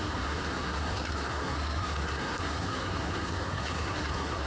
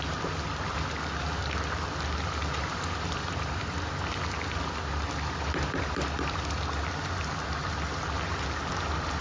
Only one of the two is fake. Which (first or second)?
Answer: first